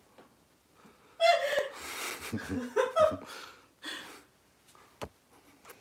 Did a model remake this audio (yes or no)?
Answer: no